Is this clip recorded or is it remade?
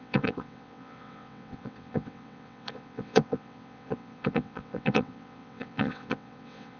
remade